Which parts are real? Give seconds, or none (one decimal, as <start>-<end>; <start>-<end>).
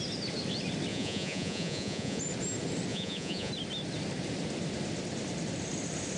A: 0.0-0.9; 2.2-2.9; 3.5-6.2